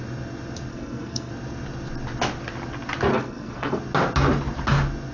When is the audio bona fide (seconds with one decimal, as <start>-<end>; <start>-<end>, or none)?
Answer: 0.0-0.7; 1.3-3.1; 3.8-5.1